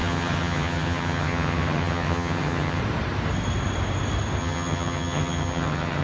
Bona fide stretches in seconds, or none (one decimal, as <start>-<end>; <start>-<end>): 2.8-4.4